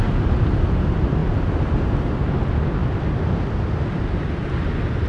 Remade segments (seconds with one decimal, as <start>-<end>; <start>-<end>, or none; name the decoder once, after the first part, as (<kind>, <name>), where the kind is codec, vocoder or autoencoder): none